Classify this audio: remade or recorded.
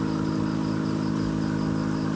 recorded